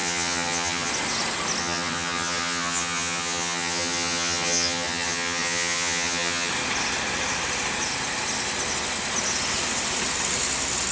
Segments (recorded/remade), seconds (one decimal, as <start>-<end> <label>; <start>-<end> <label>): 0.0-0.9 remade; 0.9-1.6 recorded; 1.6-6.5 remade; 6.5-10.9 recorded